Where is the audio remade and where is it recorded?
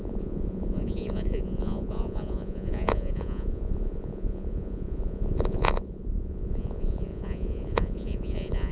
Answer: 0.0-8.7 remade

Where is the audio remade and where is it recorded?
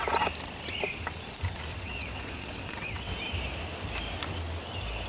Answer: 0.0-1.7 recorded; 1.7-3.2 remade; 3.2-5.1 recorded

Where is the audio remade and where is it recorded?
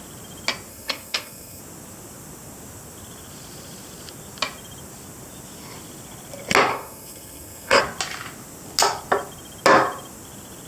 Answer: 0.0-0.7 recorded; 0.7-1.6 remade; 1.6-6.7 recorded; 6.7-7.8 remade; 7.8-10.7 recorded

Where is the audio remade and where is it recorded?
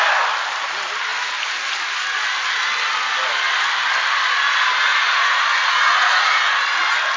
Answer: 0.0-4.9 recorded; 4.9-5.4 remade; 5.4-5.9 recorded; 5.9-6.6 remade; 6.6-7.2 recorded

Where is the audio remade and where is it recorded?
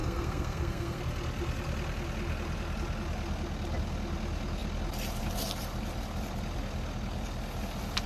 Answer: 0.0-1.0 remade; 1.0-8.1 recorded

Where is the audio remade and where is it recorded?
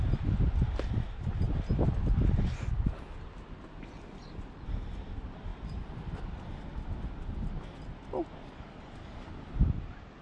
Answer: 0.0-8.4 recorded; 8.4-9.3 remade; 9.3-10.2 recorded